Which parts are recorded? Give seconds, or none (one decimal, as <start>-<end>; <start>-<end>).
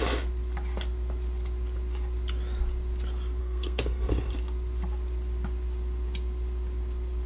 0.0-3.4; 4.1-7.3